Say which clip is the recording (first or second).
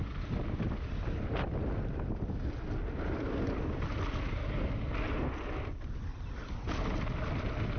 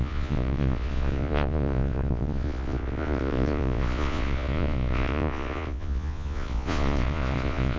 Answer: first